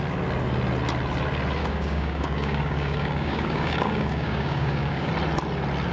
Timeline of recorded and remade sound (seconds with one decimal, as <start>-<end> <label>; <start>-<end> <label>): 0.0-1.6 recorded; 1.6-5.1 remade; 5.1-5.9 recorded